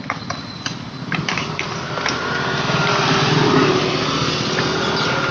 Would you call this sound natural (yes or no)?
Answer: yes